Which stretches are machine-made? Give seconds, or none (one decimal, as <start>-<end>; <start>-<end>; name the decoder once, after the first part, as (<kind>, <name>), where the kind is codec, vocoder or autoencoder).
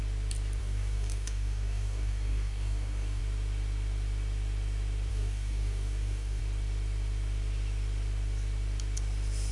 0.6-3.2 (codec, DAC); 5.1-6.4